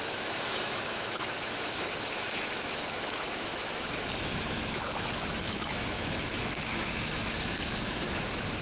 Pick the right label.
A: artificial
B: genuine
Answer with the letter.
A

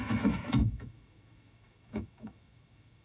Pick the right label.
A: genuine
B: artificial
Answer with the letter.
B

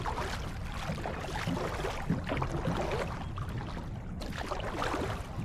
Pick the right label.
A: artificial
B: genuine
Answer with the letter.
B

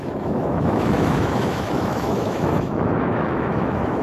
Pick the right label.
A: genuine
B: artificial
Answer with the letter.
B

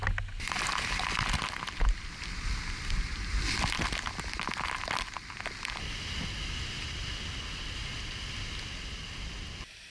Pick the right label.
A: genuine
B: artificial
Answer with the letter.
A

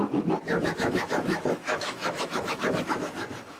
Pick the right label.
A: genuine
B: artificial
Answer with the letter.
B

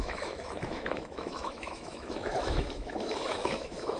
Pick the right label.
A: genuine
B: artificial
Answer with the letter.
B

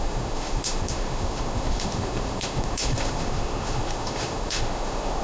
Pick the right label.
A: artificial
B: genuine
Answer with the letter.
A